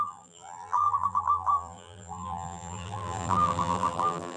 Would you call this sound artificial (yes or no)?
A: yes